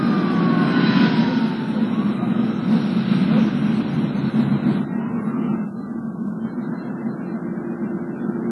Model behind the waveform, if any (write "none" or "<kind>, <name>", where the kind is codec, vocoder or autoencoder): none